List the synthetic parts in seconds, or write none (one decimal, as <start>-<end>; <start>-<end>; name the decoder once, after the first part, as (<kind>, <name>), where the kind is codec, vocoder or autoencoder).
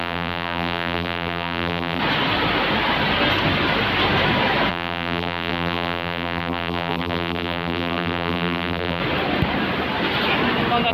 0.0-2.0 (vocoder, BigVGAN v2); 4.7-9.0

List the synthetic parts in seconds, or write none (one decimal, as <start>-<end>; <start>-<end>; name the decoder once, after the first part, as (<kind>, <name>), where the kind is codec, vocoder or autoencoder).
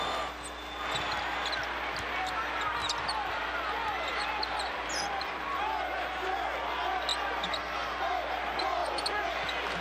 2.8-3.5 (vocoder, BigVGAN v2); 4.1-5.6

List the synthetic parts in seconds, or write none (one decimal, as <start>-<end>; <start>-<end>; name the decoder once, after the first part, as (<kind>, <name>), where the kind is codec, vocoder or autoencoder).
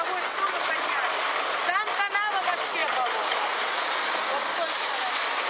none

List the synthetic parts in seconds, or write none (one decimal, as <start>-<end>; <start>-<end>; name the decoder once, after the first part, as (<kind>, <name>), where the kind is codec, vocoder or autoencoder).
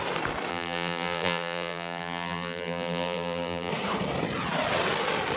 0.5-3.7 (vocoder, BigVGAN v2)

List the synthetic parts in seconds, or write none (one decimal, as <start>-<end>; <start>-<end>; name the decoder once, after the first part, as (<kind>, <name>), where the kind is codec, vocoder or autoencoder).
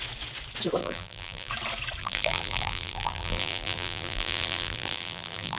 0.8-1.5 (vocoder, BigVGAN v2); 2.0-5.6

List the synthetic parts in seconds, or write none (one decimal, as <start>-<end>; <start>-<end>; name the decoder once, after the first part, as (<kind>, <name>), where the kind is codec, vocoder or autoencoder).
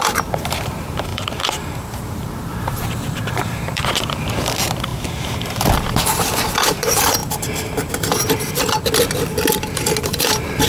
0.0-7.2 (vocoder, BigVGAN v2); 10.0-10.7